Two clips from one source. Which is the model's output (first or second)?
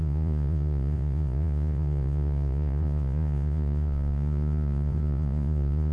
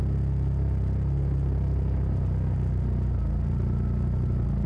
first